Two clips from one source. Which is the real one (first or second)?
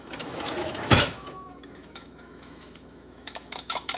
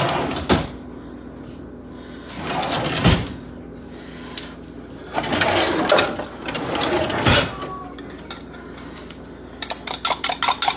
second